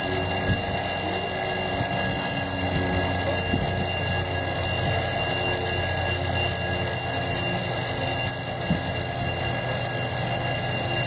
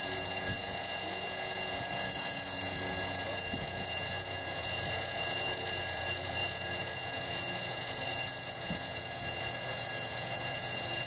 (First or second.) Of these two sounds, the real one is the first